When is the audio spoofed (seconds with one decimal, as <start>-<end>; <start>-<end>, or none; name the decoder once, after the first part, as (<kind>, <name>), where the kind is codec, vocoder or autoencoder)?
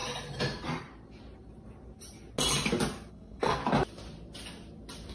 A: 3.1-3.6 (codec, SNAC)